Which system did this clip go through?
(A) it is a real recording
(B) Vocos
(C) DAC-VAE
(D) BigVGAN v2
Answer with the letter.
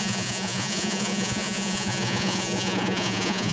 B